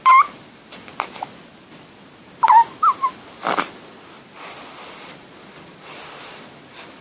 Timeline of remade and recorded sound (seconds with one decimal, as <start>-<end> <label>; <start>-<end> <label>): 0.0-0.9 remade; 0.9-4.5 recorded; 4.5-7.0 remade